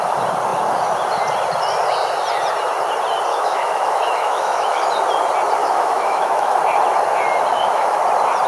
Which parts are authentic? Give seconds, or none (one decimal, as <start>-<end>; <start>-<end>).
0.0-3.3; 4.9-5.6; 6.6-7.5; 8.0-8.5